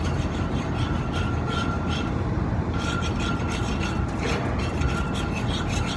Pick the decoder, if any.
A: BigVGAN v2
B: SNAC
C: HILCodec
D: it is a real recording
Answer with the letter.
D